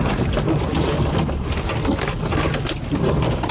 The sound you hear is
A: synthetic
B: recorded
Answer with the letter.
B